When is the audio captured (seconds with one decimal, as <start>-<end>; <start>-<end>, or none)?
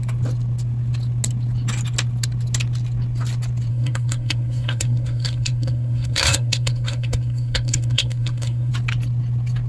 0.0-3.7; 8.7-9.7